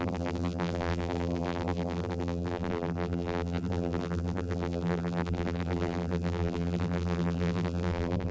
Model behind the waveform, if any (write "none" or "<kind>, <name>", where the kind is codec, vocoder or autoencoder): vocoder, BigVGAN v2